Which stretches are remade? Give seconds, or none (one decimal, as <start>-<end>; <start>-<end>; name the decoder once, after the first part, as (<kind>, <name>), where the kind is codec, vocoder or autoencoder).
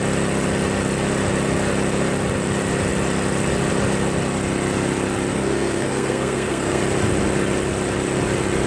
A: 5.3-6.8 (codec, SNAC)